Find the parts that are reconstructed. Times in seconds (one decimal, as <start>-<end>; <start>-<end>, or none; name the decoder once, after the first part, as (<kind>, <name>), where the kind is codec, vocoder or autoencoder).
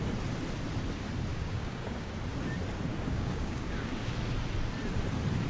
1.3-2.1 (codec, DAC); 2.9-4.1